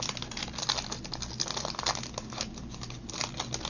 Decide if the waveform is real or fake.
real